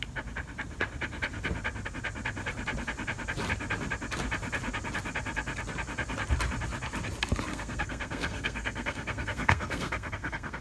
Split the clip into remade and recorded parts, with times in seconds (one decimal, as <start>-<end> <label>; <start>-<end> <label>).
0.0-7.5 recorded; 7.5-10.6 remade